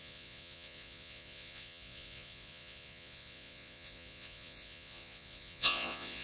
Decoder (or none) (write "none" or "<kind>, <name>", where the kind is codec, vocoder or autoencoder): vocoder, Vocos